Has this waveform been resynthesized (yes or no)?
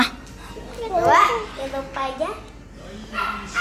no